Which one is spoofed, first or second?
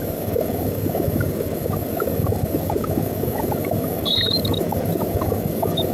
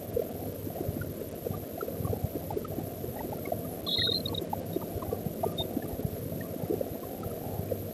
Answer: first